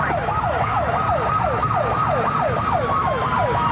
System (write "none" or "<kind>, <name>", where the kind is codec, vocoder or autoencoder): none